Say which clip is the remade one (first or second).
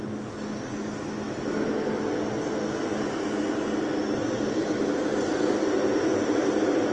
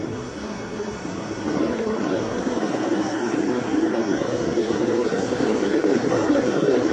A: second